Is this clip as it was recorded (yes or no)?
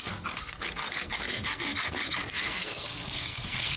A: no